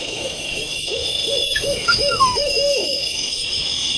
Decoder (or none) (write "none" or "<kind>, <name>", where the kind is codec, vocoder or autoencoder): autoencoder, DAC-VAE